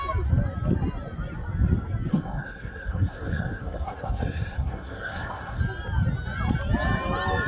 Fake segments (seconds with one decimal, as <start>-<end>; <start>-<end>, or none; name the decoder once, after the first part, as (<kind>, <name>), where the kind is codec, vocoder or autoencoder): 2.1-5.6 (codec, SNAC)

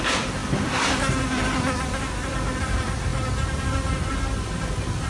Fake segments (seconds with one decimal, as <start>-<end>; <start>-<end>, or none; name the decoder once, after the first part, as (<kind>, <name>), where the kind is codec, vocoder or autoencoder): none

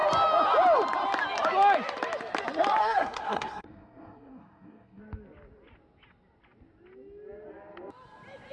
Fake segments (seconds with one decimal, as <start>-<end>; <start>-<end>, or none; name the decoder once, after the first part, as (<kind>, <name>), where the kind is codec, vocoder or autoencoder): 2.8-5.0 (codec, SNAC)

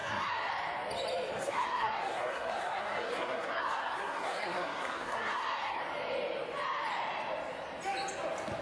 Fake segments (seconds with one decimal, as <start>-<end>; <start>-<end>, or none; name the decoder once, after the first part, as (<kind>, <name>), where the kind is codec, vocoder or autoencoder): 0.0-0.5 (codec, SNAC); 1.4-5.8

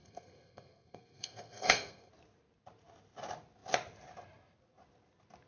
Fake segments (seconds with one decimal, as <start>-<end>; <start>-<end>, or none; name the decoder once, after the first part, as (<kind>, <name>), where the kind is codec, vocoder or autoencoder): 0.0-2.1 (codec, SNAC)